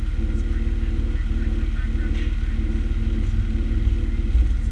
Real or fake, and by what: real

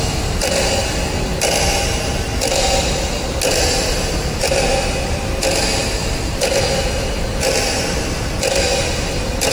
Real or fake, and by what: real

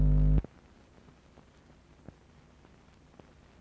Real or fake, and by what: real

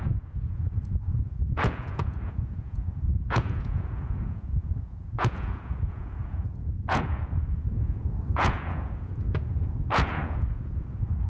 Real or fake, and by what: fake, vocoder, Vocos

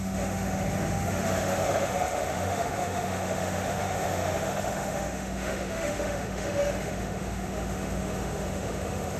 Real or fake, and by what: fake, autoencoder, DAC-VAE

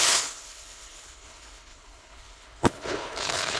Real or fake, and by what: fake, codec, HILCodec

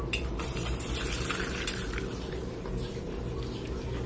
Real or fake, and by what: real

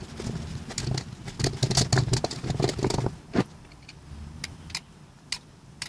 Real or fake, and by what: real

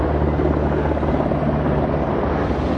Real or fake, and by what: real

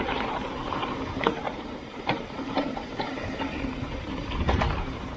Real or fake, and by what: fake, vocoder, BigVGAN v2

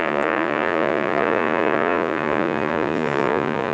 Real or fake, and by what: fake, vocoder, Vocos